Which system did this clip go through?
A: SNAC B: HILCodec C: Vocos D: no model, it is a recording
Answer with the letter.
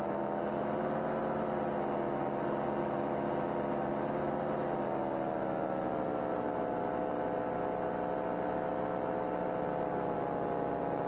D